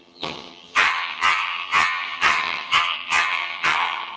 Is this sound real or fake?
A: fake